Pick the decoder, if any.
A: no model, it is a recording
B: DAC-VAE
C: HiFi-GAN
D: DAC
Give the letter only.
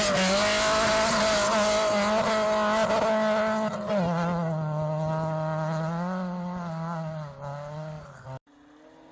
A